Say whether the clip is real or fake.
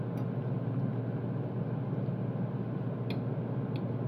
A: real